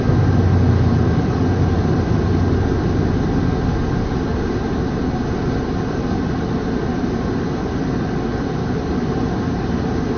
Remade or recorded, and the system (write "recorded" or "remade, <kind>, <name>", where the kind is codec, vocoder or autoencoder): recorded